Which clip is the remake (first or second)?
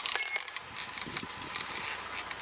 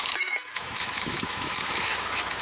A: second